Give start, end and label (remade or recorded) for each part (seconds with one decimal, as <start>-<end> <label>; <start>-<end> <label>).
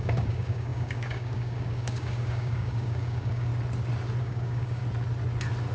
0.0-3.5 remade; 3.5-4.2 recorded; 4.2-4.8 remade; 4.8-5.7 recorded